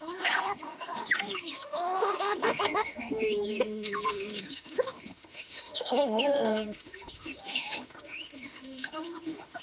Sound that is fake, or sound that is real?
fake